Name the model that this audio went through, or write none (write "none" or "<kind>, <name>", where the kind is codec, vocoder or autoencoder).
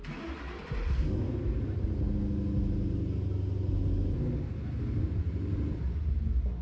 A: none